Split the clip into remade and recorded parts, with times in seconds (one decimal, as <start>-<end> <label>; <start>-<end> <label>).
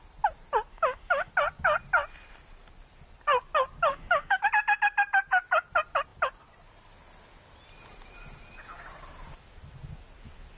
0.0-0.7 recorded; 0.7-1.3 remade; 1.3-3.9 recorded; 3.9-4.4 remade; 4.4-10.6 recorded